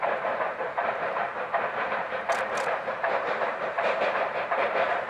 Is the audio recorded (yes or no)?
no